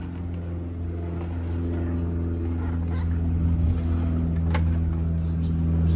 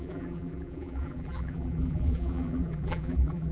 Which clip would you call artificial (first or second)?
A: second